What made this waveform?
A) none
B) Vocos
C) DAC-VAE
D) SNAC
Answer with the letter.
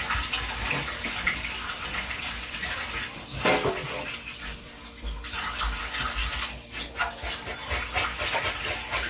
A